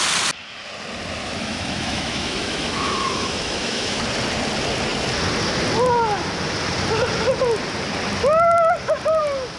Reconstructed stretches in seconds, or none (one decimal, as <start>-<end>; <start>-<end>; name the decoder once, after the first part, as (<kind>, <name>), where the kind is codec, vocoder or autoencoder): 1.2-4.0 (autoencoder, DAC-VAE)